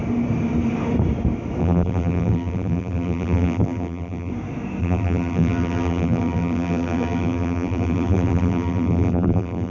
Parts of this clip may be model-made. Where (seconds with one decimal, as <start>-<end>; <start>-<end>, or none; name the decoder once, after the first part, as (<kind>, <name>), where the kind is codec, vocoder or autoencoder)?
1.6-4.3 (vocoder, BigVGAN v2); 4.8-9.7